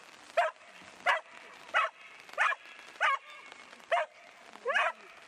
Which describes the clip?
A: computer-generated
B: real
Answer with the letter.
B